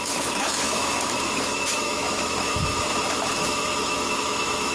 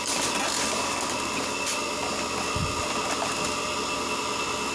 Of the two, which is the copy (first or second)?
first